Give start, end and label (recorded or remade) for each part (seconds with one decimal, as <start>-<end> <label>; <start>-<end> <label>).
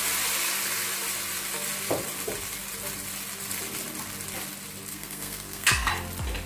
0.0-4.9 recorded; 4.9-5.9 remade; 5.9-6.5 recorded